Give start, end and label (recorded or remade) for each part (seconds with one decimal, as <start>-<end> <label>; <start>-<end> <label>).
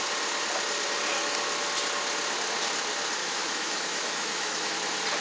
0.0-3.2 recorded; 3.2-4.7 remade; 4.7-5.2 recorded